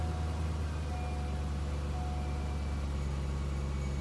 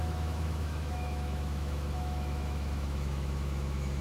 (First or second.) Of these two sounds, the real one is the first